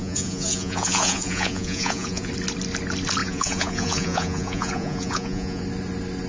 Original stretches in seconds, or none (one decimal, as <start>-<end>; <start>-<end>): 2.3-3.2; 5.6-6.3